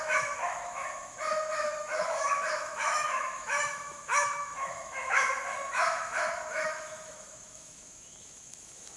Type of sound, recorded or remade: remade